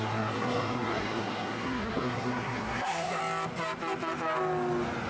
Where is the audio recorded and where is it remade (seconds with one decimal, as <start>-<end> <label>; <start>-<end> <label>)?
0.0-3.2 remade; 3.2-5.1 recorded